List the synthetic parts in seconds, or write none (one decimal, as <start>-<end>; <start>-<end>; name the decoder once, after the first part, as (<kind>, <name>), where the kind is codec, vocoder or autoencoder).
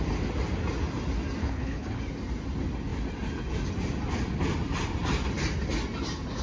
1.4-2.0 (codec, HILCodec)